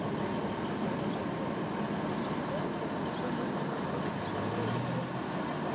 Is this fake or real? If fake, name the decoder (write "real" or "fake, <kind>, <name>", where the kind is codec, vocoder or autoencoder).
real